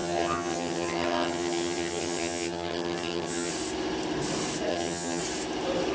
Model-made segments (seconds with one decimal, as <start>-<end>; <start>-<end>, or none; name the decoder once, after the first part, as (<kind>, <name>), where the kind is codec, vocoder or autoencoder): 0.0-3.5 (vocoder, HiFi-GAN); 4.7-5.2